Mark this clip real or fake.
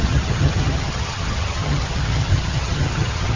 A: fake